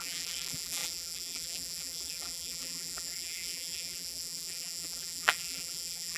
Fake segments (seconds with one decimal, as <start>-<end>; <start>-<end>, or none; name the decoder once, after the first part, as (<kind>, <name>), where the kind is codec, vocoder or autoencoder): 0.0-6.2 (vocoder, BigVGAN v2)